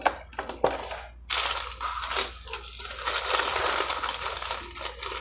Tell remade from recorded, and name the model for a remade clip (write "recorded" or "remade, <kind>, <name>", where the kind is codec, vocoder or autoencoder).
recorded